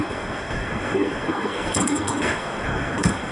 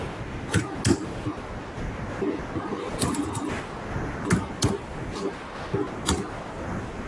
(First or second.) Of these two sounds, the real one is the second